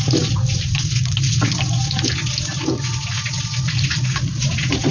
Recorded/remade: recorded